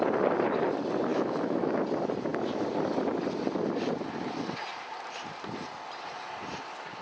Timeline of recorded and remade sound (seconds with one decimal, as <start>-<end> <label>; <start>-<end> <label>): 0.0-1.1 recorded; 1.1-1.8 remade; 1.8-7.0 recorded